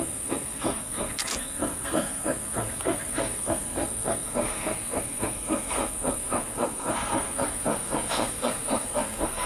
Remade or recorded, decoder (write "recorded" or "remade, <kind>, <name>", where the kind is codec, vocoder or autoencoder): remade, codec, SNAC